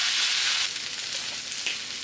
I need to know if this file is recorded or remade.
recorded